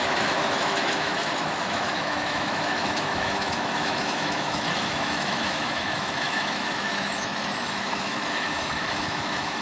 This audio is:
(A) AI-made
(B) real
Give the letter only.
A